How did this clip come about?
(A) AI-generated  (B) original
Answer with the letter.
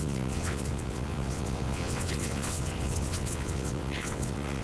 A